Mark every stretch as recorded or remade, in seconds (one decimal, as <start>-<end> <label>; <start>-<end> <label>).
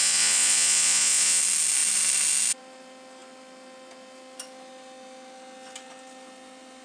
0.0-1.4 remade; 1.4-6.8 recorded